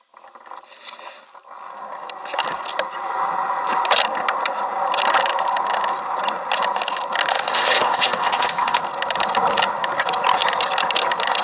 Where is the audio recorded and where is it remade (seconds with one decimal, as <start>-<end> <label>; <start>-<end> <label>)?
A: 0.0-7.3 recorded; 7.3-8.8 remade; 8.8-11.4 recorded